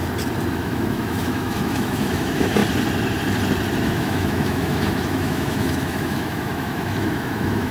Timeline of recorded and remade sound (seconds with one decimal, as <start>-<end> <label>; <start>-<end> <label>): 0.0-0.5 recorded; 0.5-2.6 remade; 2.6-3.8 recorded; 3.8-7.7 remade